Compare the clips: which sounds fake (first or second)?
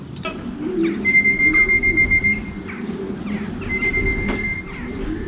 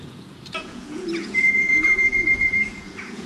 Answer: second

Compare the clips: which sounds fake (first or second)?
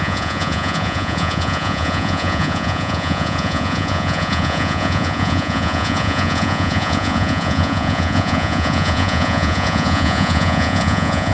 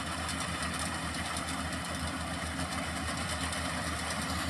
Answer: first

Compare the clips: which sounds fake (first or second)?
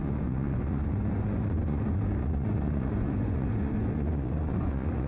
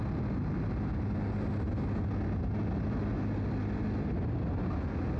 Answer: first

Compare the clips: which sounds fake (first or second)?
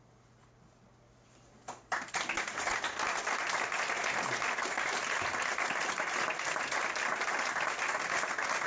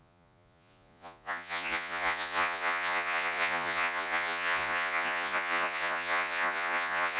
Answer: second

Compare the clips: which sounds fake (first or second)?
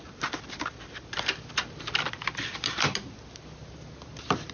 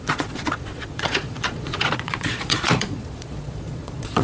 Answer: second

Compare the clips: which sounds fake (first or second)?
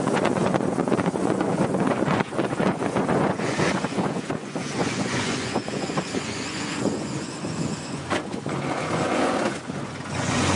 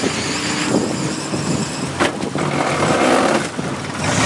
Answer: first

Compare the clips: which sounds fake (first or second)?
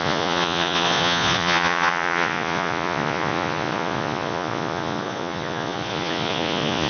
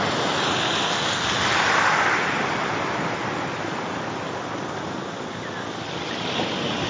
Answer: first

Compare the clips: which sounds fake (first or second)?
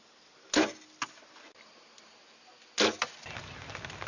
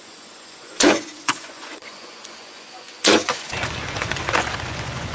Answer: second